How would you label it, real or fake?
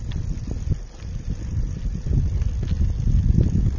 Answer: real